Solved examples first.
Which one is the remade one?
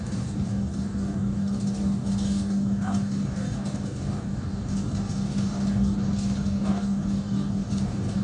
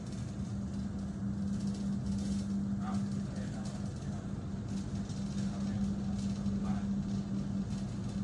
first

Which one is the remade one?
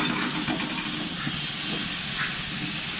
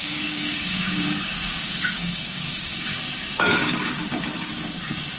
second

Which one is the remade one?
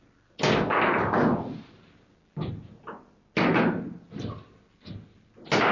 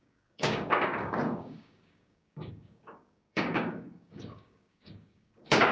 second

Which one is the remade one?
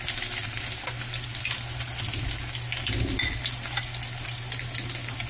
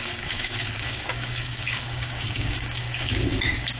second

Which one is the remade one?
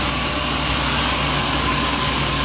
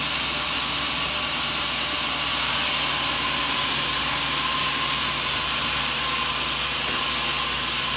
first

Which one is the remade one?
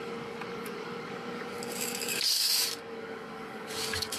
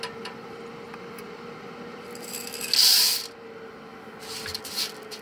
first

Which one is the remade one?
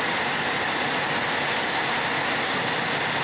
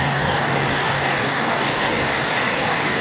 second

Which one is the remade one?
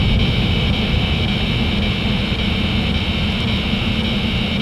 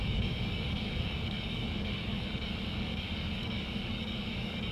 second